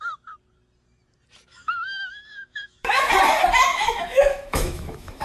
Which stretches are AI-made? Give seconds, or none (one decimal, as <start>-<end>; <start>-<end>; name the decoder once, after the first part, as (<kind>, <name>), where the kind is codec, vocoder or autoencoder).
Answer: 1.5-3.1 (autoencoder, DAC-VAE); 3.7-5.2